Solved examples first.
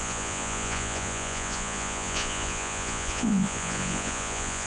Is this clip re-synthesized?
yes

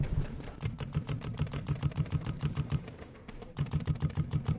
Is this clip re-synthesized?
yes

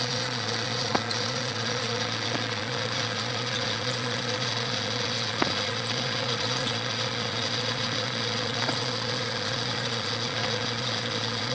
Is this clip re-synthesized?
yes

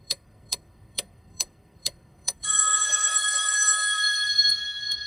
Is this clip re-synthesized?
yes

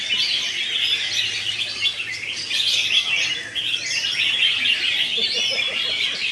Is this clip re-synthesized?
no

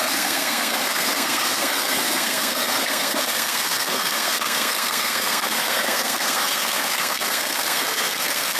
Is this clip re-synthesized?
yes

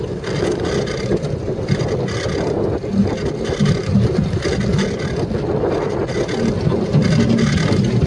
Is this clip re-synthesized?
no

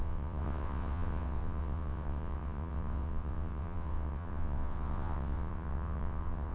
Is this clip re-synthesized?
yes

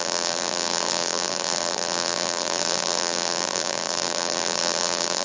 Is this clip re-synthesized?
yes